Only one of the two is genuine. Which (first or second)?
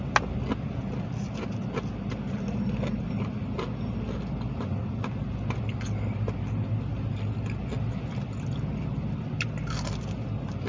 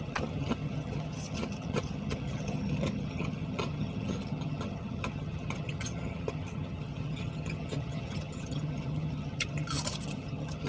first